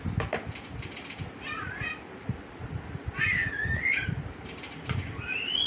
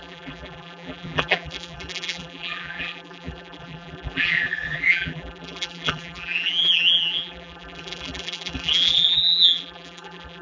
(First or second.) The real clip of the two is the first